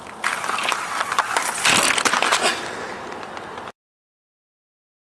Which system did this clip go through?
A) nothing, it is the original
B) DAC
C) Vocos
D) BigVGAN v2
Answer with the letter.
D